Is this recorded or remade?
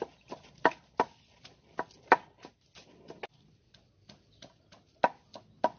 recorded